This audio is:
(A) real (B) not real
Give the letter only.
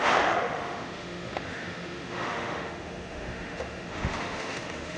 B